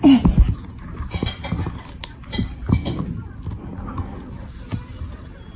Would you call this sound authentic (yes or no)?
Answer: yes